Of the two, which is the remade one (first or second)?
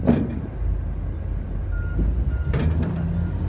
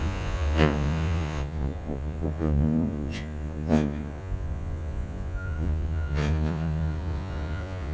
second